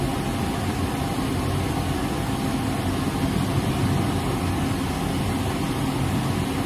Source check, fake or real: real